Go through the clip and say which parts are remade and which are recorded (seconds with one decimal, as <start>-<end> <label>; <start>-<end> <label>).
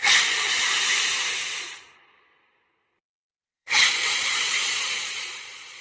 0.0-1.7 recorded; 1.7-5.8 remade